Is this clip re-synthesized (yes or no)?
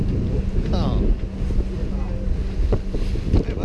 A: no